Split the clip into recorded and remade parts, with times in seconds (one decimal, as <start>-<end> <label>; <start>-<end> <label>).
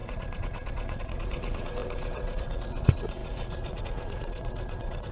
0.0-5.1 remade